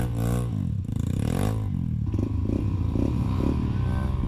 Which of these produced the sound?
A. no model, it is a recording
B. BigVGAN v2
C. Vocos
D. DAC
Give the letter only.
A